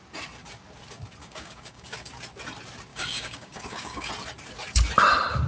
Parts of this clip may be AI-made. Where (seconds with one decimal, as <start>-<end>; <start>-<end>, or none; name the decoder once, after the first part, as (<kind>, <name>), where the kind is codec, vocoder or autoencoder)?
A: 1.2-2.1 (codec, DAC); 2.9-4.1